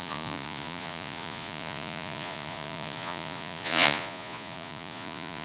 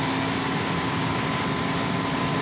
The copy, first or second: first